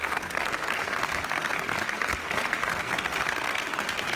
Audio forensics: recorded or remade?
remade